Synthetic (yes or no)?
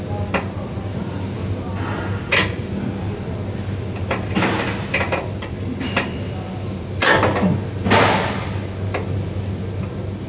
no